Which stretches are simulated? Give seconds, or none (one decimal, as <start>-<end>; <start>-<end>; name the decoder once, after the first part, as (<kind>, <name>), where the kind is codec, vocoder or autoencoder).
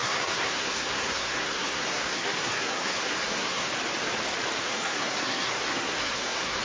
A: 0.0-3.7 (codec, SNAC); 4.6-6.6